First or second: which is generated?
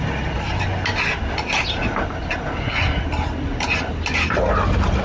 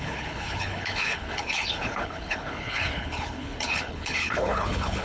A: second